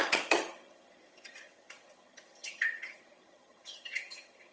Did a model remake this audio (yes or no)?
yes